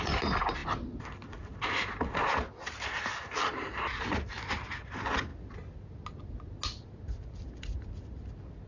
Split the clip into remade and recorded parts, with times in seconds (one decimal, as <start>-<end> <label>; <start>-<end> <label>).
0.0-8.7 recorded